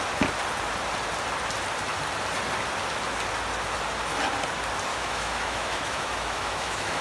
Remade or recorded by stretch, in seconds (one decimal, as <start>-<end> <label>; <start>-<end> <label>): 0.0-4.9 recorded; 4.9-7.0 remade